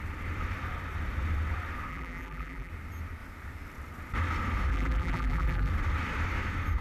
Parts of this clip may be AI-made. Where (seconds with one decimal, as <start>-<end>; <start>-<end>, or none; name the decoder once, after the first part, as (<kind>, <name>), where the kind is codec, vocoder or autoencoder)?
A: 1.9-2.7 (vocoder, BigVGAN v2); 4.7-5.7